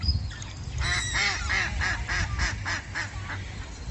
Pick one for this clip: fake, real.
real